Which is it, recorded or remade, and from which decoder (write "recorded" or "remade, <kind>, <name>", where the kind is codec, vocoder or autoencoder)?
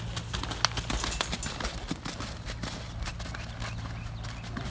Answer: recorded